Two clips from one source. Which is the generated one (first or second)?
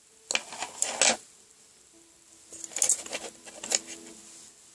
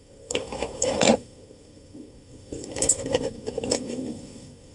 second